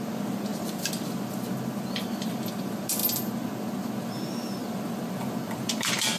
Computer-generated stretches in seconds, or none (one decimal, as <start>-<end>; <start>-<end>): 0.5-1.3; 4.6-6.2